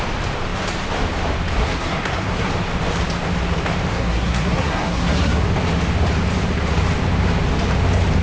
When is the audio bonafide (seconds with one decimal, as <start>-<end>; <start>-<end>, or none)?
0.0-1.6; 2.5-3.9; 5.4-8.2